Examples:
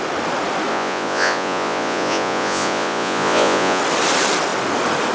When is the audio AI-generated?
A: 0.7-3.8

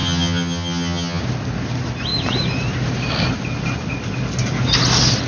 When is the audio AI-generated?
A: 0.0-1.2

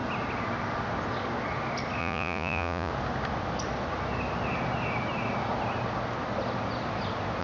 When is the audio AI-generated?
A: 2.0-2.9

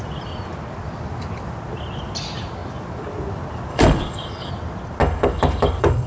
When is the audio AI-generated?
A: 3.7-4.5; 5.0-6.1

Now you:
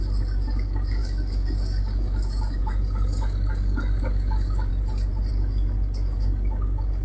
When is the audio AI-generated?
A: 0.0-4.7; 5.3-7.0

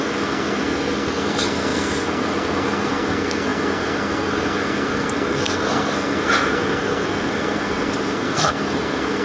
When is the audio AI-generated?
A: 0.0-9.2